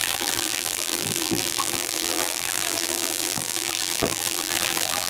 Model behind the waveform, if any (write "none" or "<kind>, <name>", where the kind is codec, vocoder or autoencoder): vocoder, BigVGAN v2